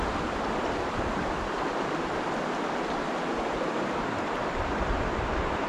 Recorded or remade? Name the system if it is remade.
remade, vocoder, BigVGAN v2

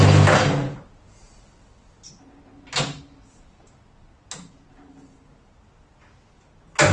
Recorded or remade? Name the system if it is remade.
recorded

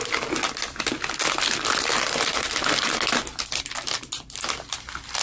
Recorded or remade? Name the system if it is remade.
recorded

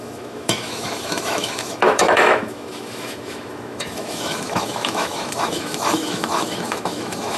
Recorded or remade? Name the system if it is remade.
remade, autoencoder, DAC-VAE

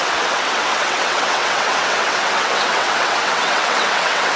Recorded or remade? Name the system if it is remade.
remade, vocoder, WaveNeXt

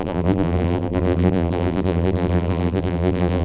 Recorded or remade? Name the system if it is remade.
remade, vocoder, BigVGAN v2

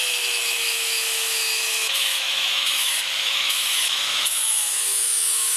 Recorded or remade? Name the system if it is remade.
remade, autoencoder, DAC-VAE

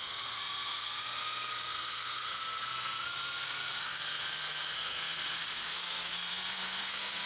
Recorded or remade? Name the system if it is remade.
remade, codec, SNAC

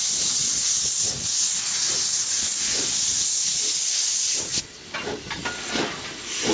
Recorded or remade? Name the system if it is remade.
recorded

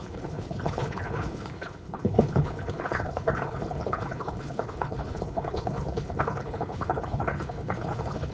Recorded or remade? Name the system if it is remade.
remade, codec, HILCodec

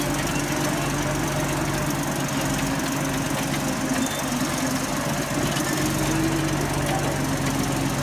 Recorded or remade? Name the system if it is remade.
recorded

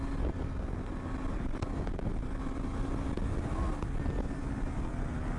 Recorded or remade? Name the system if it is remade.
recorded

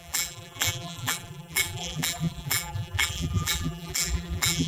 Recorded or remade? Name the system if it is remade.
remade, vocoder, BigVGAN v2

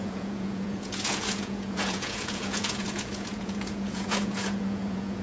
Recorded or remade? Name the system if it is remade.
remade, vocoder, Vocos